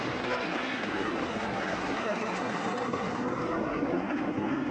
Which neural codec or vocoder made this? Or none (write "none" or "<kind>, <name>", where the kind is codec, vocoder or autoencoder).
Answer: codec, SNAC